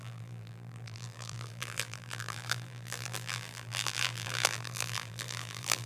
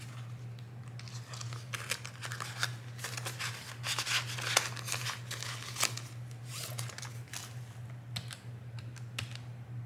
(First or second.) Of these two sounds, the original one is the second